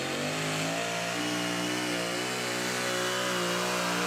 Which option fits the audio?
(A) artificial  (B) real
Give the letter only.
B